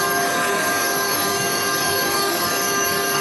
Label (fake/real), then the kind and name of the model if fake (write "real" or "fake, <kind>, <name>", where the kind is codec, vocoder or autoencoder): fake, codec, DAC